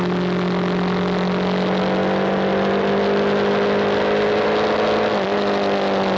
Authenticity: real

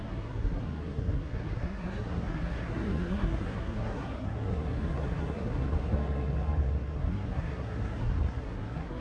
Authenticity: fake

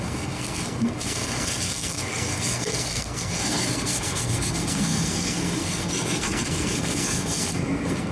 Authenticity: fake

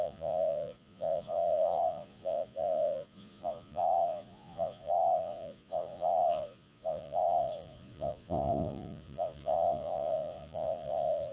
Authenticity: fake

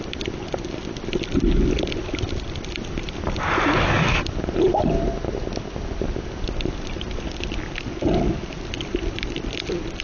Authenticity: real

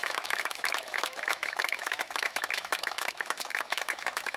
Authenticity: fake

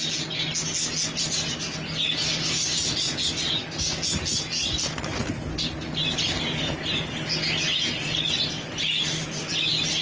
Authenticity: real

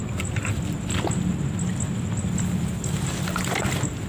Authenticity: real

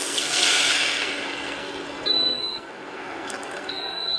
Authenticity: fake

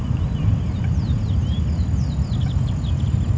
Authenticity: real